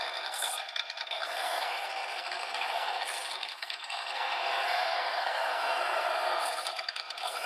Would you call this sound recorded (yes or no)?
no